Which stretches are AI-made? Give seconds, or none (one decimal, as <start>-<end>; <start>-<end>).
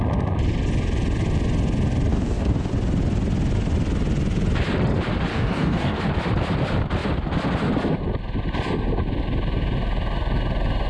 2.1-2.7; 5.3-6.0